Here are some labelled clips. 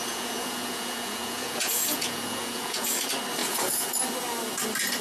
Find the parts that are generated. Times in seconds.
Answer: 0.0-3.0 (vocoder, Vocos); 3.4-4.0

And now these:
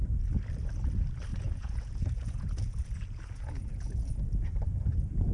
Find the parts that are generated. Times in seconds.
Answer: 1.3-4.5 (vocoder, Vocos)

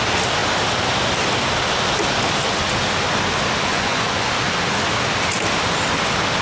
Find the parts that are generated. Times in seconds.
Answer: 3.7-4.3 (vocoder, Vocos)

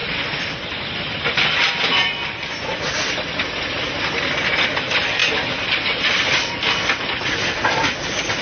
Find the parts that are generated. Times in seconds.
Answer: none

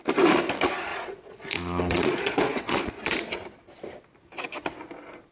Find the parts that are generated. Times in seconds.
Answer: 0.9-3.3 (vocoder, Vocos)

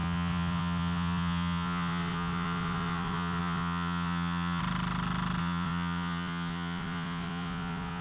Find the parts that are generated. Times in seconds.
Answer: 0.0-4.6 (vocoder, Vocos); 5.4-8.0

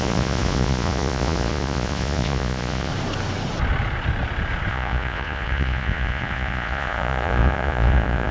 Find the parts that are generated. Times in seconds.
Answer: 0.0-2.9 (vocoder, Vocos); 4.7-8.3